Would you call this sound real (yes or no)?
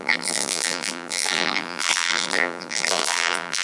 no